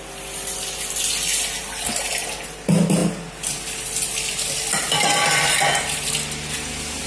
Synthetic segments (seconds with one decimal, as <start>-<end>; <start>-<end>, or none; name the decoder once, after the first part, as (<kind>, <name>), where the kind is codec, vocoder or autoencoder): none